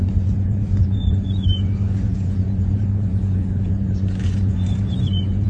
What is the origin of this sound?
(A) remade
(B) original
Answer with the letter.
A